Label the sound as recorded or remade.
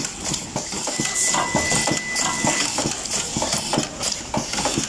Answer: recorded